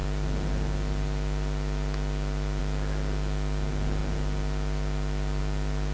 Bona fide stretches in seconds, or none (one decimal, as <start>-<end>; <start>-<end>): 0.0-5.9